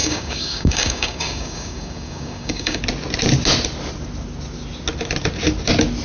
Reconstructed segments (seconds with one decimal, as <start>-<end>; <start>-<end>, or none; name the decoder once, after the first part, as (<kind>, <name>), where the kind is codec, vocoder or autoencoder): 0.0-2.8 (codec, DAC)

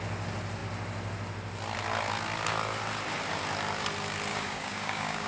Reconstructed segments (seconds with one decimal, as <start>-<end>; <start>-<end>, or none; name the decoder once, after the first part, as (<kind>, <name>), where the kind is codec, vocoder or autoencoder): 4.3-5.3 (codec, DAC)